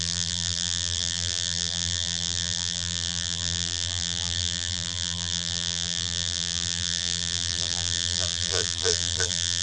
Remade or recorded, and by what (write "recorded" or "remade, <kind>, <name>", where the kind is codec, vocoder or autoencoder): remade, vocoder, BigVGAN v2